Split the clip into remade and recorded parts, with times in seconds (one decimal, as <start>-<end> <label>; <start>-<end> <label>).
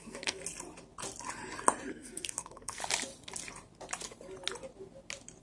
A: 0.0-0.4 remade; 0.4-1.9 recorded; 1.9-2.8 remade; 2.8-5.4 recorded